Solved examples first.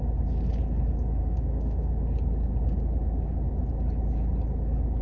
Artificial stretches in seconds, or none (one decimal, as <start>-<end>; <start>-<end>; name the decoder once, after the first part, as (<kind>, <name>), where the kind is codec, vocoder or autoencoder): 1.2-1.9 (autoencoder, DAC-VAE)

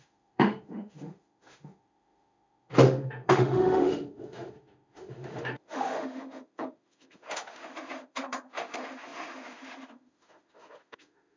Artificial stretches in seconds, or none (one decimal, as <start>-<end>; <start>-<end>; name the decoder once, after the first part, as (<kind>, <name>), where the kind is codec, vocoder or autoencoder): 0.0-11.4 (autoencoder, DAC-VAE)

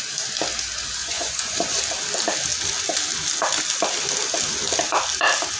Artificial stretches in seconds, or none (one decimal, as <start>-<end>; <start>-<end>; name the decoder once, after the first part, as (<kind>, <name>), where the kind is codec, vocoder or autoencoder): 1.0-1.8 (vocoder, Vocos)

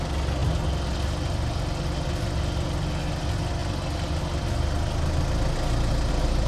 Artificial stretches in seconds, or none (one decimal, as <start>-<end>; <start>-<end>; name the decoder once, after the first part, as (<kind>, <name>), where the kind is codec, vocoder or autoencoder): none

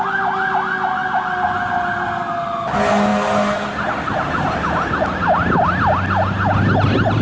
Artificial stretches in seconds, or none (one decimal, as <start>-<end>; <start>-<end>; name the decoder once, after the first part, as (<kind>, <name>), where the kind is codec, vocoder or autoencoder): none